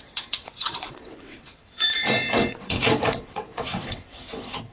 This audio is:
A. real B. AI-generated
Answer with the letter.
B